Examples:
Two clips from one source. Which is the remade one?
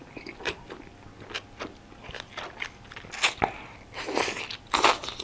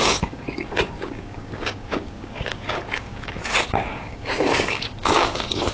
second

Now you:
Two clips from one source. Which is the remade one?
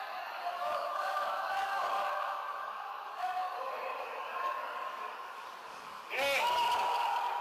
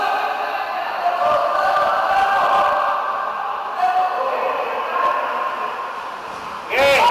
first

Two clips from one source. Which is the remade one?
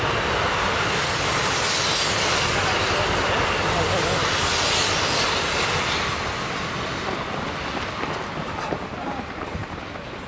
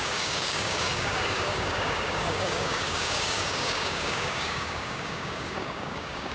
second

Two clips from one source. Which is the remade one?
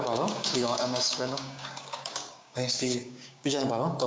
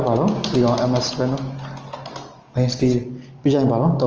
first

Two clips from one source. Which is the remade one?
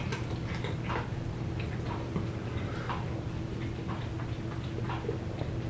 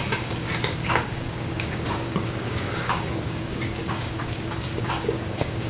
second